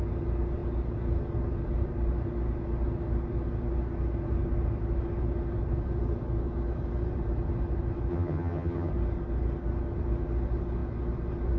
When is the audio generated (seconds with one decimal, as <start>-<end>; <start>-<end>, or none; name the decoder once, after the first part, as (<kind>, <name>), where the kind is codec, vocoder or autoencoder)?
8.1-8.9 (vocoder, HiFi-GAN)